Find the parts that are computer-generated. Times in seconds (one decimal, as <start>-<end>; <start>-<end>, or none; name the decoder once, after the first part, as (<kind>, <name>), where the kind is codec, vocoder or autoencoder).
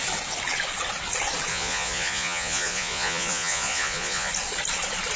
1.5-4.3 (vocoder, Vocos)